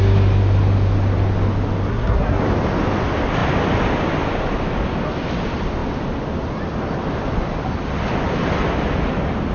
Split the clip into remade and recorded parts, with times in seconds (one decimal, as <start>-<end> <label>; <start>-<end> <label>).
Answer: 0.0-1.9 recorded; 1.9-2.4 remade; 2.4-9.5 recorded